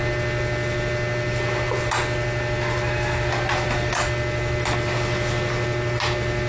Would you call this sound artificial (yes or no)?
no